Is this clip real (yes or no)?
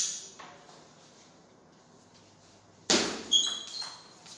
yes